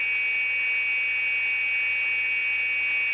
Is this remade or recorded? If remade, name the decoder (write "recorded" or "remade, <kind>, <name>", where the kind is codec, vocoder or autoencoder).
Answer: recorded